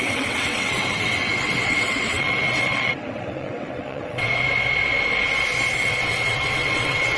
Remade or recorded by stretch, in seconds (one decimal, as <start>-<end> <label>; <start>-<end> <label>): 0.0-4.3 remade; 4.3-6.0 recorded; 6.0-7.2 remade